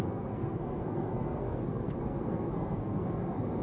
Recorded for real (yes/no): no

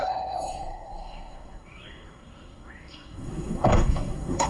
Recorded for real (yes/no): no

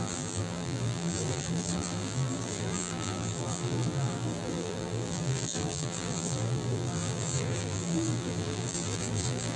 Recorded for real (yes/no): no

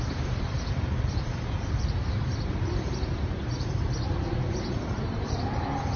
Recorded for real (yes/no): no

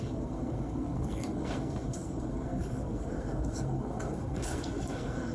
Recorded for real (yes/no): no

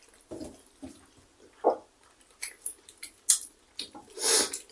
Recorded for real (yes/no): yes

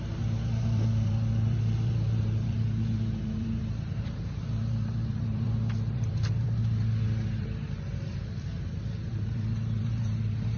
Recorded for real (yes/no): no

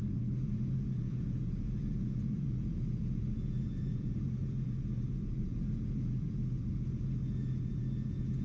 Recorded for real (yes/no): no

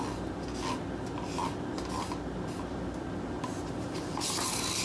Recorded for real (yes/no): yes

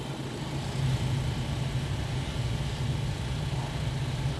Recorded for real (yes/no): yes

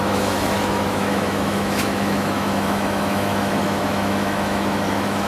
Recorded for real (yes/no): no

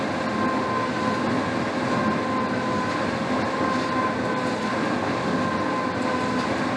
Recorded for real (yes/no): yes